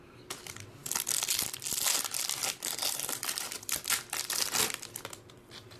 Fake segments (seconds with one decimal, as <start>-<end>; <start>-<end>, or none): 0.8-1.4; 2.4-5.3